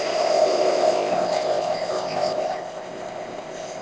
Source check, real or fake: fake